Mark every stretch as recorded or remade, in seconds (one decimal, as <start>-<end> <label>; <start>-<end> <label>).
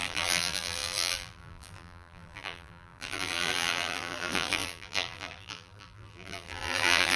0.0-7.2 remade